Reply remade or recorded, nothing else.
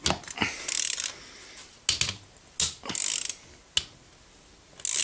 recorded